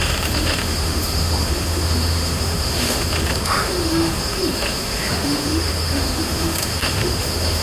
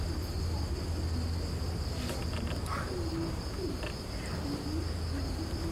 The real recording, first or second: second